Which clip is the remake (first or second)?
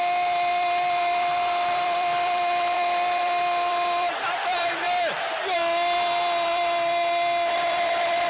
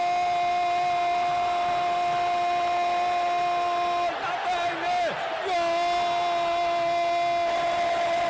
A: first